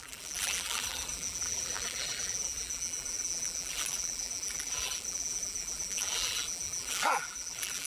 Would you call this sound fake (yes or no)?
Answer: yes